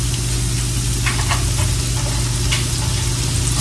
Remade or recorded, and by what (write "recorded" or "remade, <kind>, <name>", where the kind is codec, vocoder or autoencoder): recorded